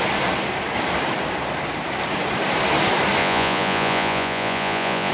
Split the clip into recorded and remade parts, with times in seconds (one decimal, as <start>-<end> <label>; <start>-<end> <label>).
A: 0.0-3.2 recorded; 3.2-5.1 remade